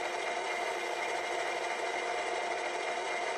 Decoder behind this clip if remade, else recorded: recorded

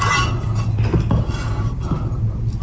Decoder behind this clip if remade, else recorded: recorded